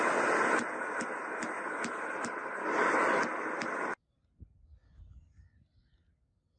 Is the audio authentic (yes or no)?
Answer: yes